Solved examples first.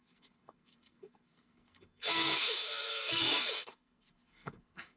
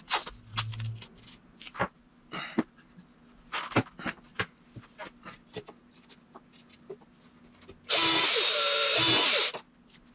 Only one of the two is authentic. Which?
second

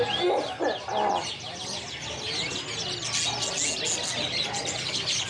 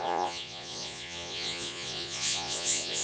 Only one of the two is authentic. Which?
first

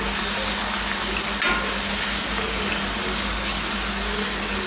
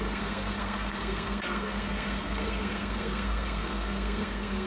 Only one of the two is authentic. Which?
first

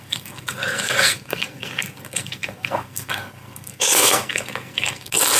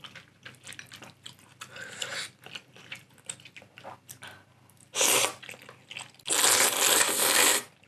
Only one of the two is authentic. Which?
second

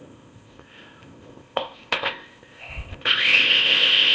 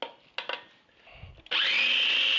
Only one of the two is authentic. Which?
second